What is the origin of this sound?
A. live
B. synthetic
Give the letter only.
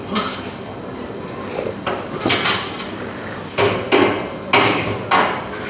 A